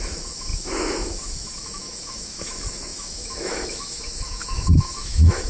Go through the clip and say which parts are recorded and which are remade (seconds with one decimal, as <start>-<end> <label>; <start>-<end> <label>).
0.0-5.5 remade